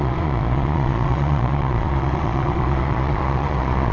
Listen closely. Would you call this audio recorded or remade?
remade